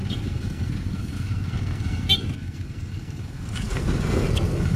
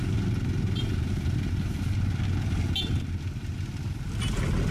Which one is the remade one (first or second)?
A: first